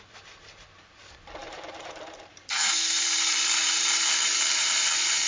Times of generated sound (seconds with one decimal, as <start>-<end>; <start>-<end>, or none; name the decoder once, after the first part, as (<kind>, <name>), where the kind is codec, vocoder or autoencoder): 0.0-5.3 (vocoder, BigVGAN v2)